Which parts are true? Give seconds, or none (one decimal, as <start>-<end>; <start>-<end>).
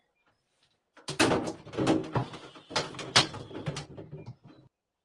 0.0-5.0